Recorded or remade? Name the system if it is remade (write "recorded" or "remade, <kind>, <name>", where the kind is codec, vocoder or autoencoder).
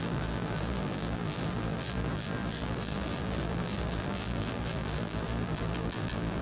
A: remade, vocoder, BigVGAN v2